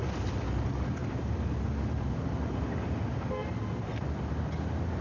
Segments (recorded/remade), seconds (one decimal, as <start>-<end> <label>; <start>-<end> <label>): 0.0-5.0 recorded